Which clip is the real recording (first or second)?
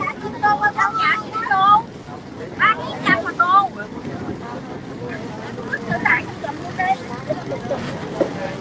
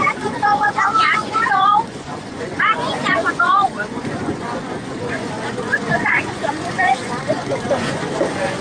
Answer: first